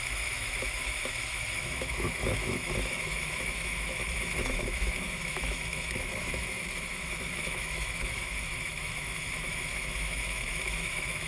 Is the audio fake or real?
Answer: fake